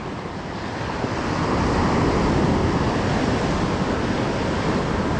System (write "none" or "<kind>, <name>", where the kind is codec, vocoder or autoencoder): none